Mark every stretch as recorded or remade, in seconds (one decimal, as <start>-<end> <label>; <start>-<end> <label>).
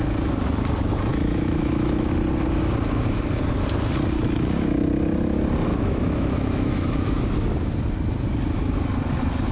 0.0-1.1 recorded; 1.1-2.1 remade; 2.1-5.7 recorded; 5.7-7.2 remade; 7.2-9.5 recorded